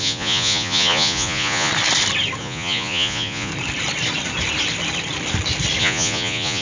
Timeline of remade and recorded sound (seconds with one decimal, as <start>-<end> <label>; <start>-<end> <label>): 0.0-1.7 remade; 1.7-2.4 recorded; 2.4-3.5 remade; 3.5-5.8 recorded; 5.8-6.6 remade